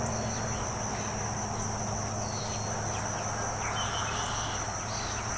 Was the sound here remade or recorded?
recorded